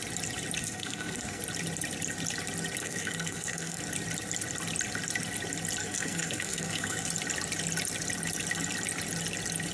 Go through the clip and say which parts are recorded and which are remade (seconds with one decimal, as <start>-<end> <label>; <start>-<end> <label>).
0.0-0.6 recorded; 0.6-1.4 remade; 1.4-2.8 recorded; 2.8-3.8 remade; 3.8-5.8 recorded; 5.8-7.1 remade; 7.1-9.7 recorded